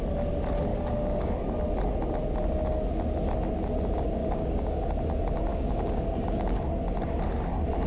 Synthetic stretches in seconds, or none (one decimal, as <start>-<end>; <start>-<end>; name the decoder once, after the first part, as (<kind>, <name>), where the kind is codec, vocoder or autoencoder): 0.7-1.3 (codec, DAC); 4.2-4.8; 5.5-6.6

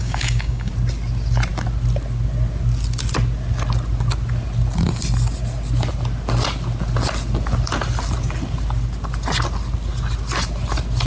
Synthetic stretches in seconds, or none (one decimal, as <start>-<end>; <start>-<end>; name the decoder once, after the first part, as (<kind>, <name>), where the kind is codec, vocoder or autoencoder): 0.0-0.7 (codec, DAC)

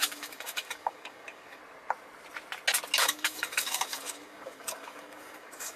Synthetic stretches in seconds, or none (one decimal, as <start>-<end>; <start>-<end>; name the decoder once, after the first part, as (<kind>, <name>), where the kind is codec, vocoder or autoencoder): 0.0-1.6 (codec, DAC); 3.0-5.8

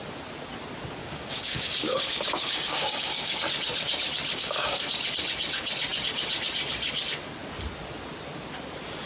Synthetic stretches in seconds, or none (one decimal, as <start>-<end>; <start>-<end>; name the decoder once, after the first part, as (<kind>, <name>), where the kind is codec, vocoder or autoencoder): 1.0-3.4 (codec, DAC); 4.3-4.9

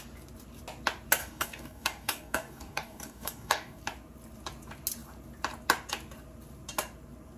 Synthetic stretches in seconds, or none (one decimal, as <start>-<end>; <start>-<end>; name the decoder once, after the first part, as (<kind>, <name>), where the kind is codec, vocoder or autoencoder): 1.2-3.8 (codec, DAC)